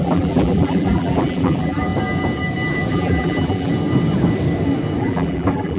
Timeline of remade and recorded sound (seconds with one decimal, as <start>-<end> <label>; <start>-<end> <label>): 0.0-1.9 remade; 1.9-2.9 recorded; 2.9-3.7 remade; 3.7-5.0 recorded; 5.0-5.8 remade